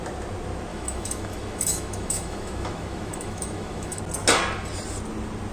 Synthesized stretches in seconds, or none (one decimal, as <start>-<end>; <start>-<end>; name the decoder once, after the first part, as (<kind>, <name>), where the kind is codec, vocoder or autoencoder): 0.7-4.0 (autoencoder, DAC-VAE)